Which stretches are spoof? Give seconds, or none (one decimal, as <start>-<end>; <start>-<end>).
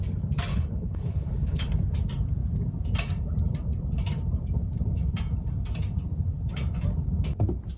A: 0.5-1.7